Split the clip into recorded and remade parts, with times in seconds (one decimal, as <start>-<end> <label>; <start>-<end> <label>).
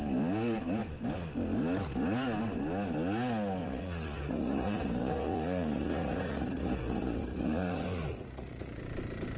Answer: 0.0-3.6 recorded; 3.6-8.8 remade; 8.8-9.4 recorded